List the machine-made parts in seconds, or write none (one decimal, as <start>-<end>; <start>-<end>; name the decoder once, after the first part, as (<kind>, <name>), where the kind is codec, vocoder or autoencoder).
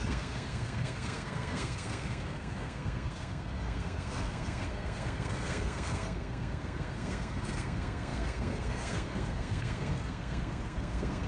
0.0-11.3 (codec, SNAC)